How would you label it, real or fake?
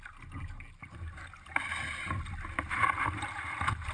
real